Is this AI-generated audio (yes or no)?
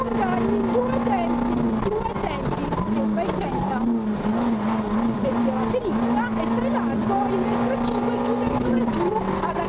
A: no